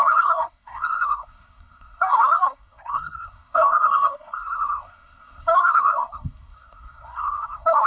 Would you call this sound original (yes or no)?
no